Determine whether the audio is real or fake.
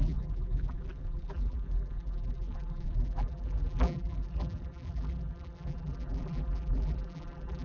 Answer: fake